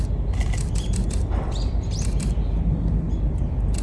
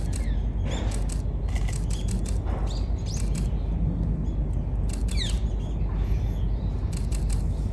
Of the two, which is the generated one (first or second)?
first